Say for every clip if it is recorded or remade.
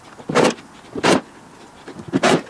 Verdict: recorded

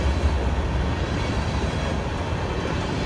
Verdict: recorded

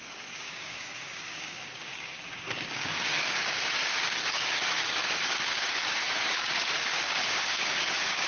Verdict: remade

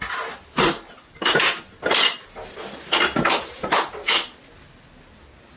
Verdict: recorded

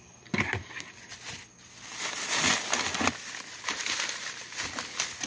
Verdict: recorded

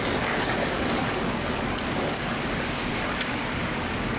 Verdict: remade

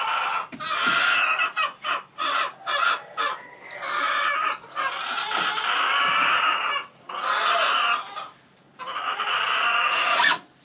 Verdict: recorded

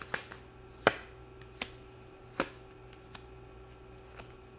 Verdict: recorded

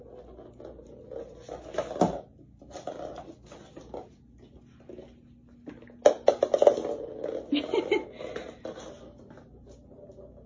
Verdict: recorded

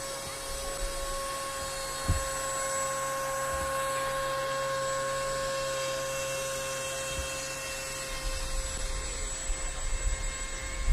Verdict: recorded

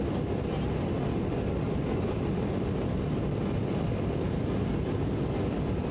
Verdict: recorded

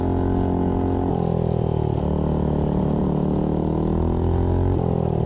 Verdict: recorded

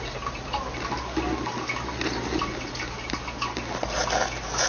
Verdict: recorded